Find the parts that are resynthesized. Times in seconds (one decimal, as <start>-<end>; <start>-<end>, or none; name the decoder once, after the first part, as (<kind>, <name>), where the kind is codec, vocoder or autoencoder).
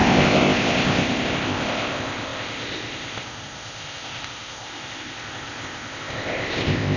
0.0-7.0 (codec, ZipCodec)